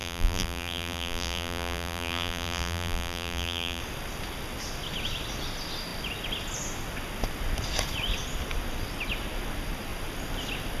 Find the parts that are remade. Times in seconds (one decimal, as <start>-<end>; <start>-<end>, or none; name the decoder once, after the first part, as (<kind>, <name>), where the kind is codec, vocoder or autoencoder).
0.0-3.8 (vocoder, BigVGAN v2)